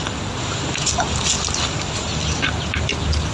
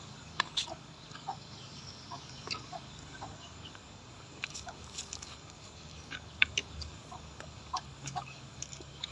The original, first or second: first